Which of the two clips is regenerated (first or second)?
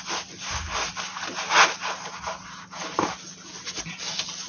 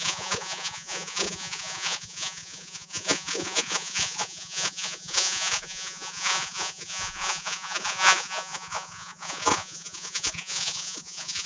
second